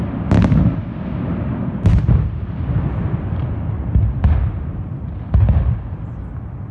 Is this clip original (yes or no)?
yes